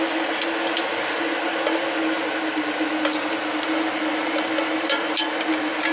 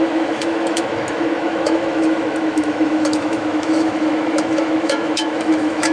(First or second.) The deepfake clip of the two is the second